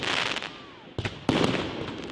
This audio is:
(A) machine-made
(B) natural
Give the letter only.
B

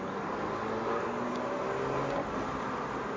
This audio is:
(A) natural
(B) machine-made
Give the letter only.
A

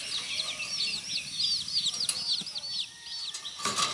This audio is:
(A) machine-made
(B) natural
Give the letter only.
B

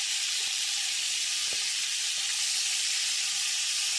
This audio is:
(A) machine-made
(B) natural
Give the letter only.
B